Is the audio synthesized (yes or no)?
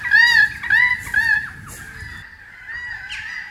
no